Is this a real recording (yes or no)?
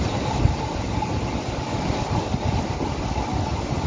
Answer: yes